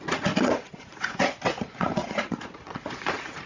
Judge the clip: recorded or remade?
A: remade